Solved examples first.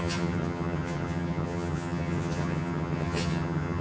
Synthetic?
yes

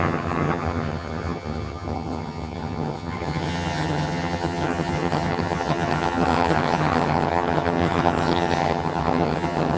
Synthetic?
yes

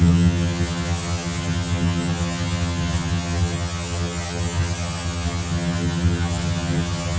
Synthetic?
yes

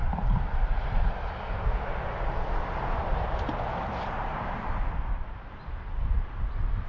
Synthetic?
no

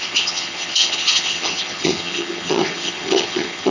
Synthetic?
yes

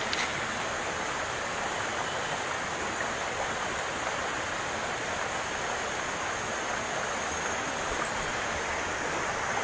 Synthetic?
no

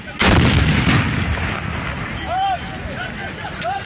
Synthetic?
no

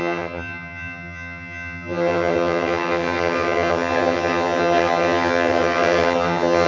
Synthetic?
yes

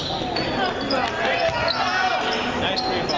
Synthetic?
no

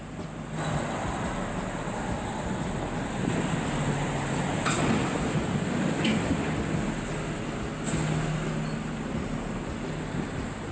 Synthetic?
no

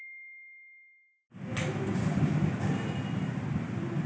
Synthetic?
no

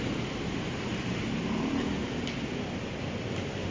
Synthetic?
no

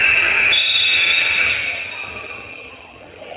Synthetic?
yes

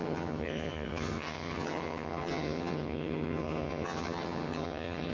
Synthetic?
yes